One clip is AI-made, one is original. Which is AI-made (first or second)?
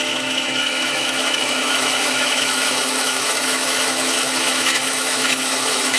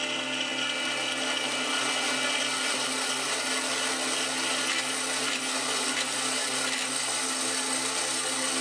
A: first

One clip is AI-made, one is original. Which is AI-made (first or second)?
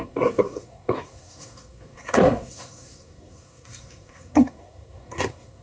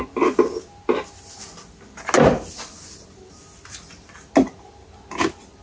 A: first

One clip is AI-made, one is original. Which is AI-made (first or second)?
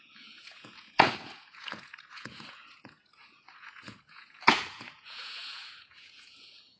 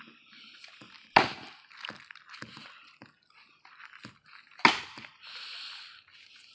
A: first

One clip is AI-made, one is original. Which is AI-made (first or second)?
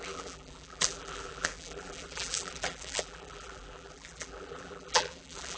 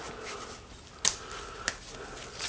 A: first